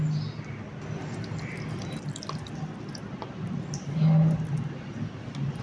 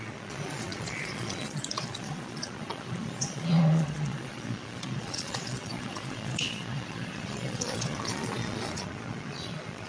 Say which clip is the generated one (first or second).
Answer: second